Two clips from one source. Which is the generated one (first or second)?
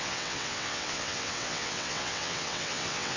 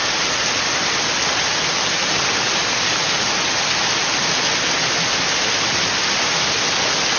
first